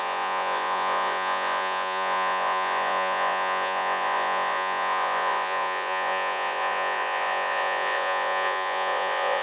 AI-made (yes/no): yes